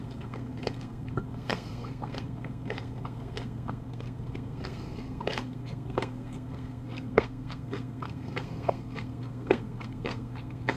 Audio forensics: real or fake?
fake